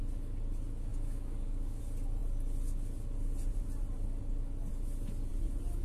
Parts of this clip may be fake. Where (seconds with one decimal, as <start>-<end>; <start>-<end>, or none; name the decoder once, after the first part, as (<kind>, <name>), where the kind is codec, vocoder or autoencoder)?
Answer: 0.9-1.8 (codec, DAC)